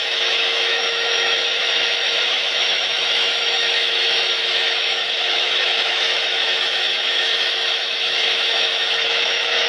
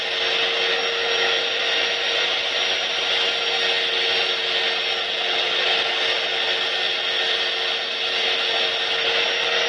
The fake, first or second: first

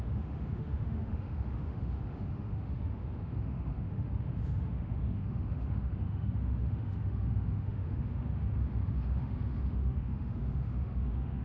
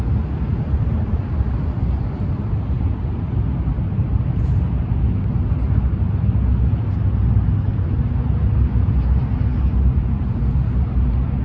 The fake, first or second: first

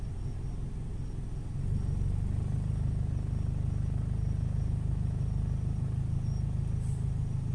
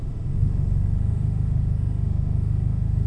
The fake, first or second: second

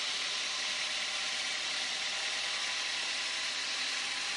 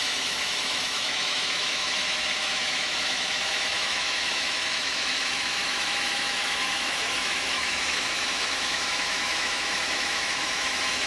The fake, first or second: second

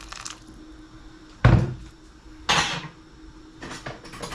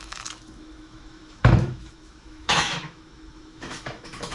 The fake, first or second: second